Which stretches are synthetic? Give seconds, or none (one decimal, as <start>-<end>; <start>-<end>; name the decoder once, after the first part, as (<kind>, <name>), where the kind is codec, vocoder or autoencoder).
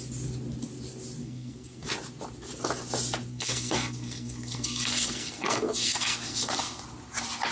1.2-1.9 (codec, SNAC); 3.3-6.8